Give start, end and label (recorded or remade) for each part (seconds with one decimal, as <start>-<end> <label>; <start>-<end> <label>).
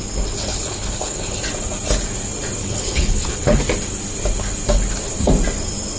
0.0-0.5 recorded; 0.5-1.4 remade; 1.4-2.6 recorded; 2.6-3.6 remade; 3.6-6.0 recorded